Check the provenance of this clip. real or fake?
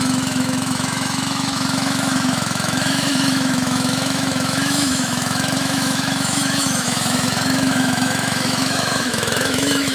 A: fake